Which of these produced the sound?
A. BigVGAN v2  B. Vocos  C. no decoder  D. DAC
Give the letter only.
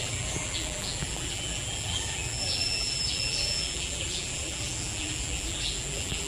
A